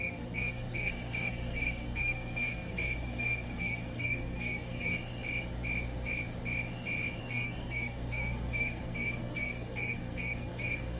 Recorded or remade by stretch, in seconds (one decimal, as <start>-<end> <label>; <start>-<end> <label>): 0.0-5.0 remade; 5.0-7.2 recorded; 7.2-11.0 remade